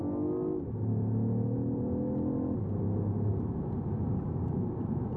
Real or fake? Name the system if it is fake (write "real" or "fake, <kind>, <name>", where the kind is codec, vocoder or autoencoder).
real